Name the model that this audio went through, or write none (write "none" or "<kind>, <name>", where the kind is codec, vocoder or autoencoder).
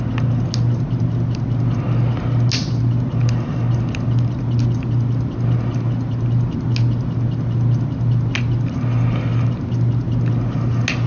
none